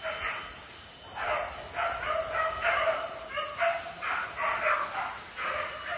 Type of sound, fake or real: real